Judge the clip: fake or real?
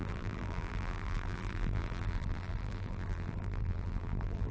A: fake